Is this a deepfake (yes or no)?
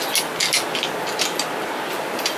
no